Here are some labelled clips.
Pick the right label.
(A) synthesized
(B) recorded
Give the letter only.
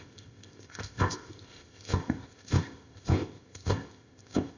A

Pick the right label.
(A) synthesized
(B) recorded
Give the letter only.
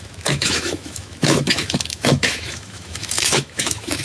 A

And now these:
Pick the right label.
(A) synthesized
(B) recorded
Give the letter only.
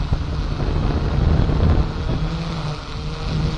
B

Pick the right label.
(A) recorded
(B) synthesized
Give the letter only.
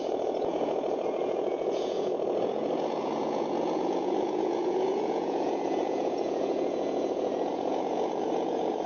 B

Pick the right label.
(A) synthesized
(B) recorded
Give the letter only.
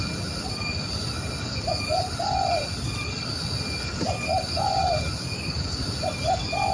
B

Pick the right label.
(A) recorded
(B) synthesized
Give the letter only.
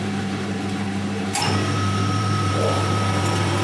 B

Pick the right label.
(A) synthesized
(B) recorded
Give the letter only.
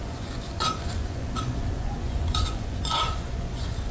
A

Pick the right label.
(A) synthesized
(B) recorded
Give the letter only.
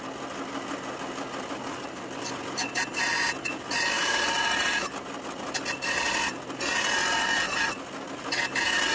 B